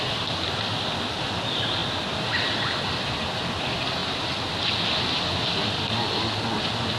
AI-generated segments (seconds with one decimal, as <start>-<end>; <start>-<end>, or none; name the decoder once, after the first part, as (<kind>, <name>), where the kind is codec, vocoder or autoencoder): none